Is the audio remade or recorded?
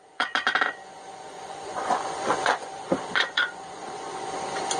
remade